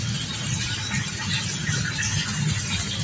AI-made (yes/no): no